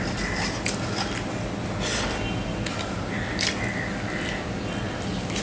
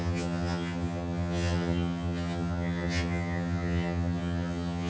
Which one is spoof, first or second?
second